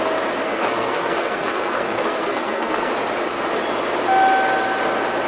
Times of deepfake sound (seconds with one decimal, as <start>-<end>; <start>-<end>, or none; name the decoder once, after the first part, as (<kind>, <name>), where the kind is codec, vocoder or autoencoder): 0.4-2.9 (codec, SNAC)